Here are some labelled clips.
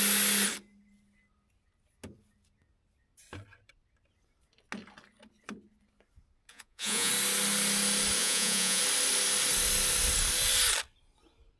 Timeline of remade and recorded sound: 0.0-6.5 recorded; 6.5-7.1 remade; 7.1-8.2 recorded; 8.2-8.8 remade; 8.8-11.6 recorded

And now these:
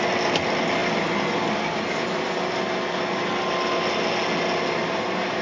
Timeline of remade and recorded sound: 0.0-5.4 recorded